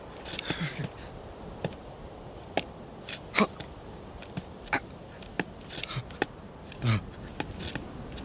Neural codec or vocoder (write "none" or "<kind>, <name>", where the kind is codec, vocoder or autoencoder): vocoder, BigVGAN v2